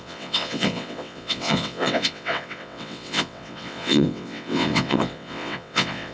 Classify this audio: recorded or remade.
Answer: remade